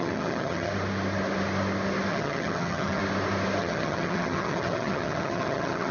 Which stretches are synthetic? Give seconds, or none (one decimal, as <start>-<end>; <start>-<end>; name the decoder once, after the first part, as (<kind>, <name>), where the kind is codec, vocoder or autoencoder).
0.0-0.7 (vocoder, HiFi-GAN); 2.1-3.0; 3.6-5.9